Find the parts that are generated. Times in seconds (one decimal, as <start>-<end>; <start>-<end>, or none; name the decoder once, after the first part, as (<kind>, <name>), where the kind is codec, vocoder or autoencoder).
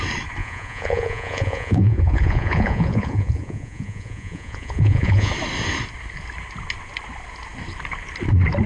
0.4-5.3 (vocoder, Vocos)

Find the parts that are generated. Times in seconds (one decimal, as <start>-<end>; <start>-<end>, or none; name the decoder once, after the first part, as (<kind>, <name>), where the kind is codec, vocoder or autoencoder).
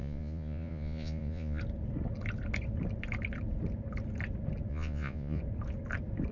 0.0-1.6 (vocoder, Vocos); 4.7-5.4